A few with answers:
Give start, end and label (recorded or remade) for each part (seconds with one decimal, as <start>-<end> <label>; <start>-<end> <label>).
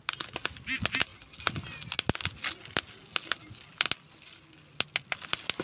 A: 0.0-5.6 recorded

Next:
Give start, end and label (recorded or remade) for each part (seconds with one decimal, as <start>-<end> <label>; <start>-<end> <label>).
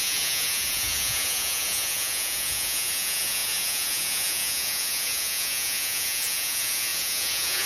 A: 0.0-7.7 remade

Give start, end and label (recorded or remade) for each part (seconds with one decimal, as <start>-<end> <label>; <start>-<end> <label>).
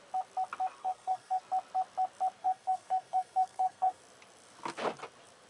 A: 0.0-0.8 recorded; 0.8-1.4 remade; 1.4-2.4 recorded; 2.4-4.0 remade; 4.0-5.5 recorded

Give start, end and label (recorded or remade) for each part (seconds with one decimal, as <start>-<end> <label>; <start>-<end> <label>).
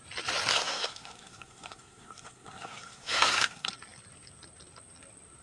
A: 0.0-0.5 recorded; 0.5-3.7 remade; 3.7-5.4 recorded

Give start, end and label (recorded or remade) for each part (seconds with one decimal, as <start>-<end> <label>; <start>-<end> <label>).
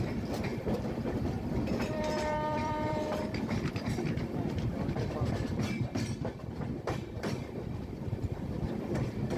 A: 0.0-9.4 remade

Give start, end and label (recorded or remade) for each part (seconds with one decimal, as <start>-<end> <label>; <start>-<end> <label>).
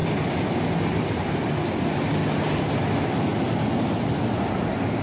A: 0.0-5.0 recorded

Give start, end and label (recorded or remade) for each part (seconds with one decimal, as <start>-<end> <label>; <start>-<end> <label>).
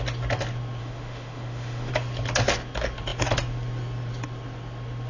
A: 0.0-0.8 recorded; 0.8-1.9 remade; 1.9-5.1 recorded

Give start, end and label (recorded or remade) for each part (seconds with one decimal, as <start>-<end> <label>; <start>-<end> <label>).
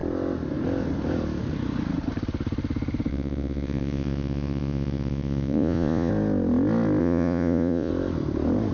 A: 0.0-3.1 recorded; 3.1-6.1 remade; 6.1-7.0 recorded; 7.0-7.9 remade; 7.9-8.7 recorded